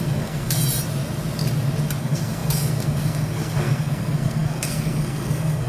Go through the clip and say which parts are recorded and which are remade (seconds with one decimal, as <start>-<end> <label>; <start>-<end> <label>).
0.0-0.6 remade; 0.6-2.0 recorded; 2.0-5.7 remade